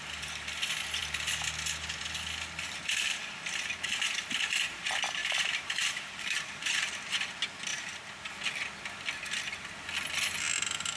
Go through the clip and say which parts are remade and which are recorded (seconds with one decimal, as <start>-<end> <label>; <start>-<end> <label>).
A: 0.0-5.2 recorded; 5.2-6.9 remade; 6.9-7.7 recorded; 7.7-8.3 remade; 8.3-11.0 recorded